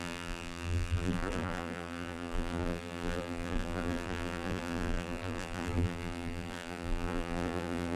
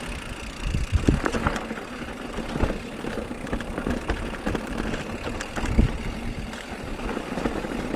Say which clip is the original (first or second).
second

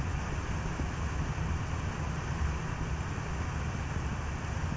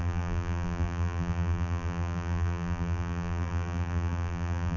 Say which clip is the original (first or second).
first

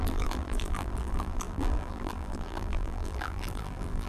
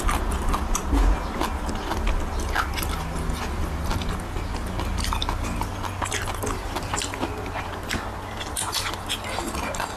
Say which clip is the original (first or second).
second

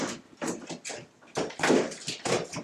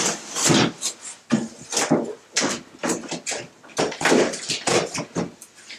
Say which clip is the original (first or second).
second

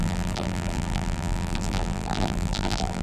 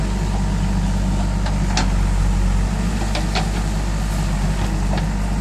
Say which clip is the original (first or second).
second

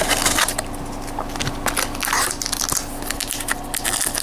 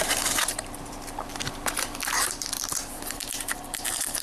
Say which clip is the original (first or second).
first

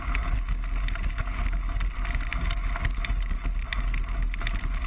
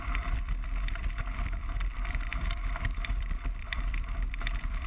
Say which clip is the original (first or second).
first